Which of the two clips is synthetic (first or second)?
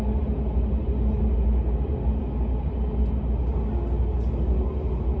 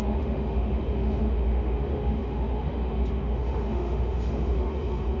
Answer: second